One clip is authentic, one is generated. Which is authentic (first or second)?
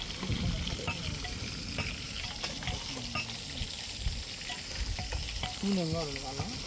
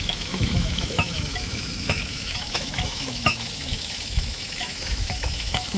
first